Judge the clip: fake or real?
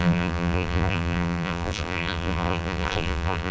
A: fake